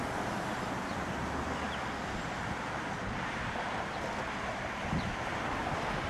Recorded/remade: recorded